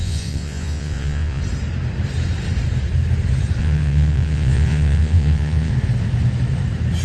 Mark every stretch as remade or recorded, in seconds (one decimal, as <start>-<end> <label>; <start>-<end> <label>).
0.0-1.4 remade; 1.4-3.6 recorded; 3.6-5.7 remade; 5.7-7.0 recorded